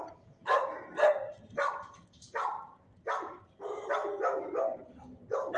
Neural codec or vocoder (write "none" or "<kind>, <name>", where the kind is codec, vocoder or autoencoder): none